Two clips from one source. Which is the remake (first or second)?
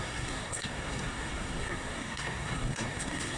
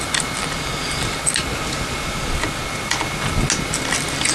first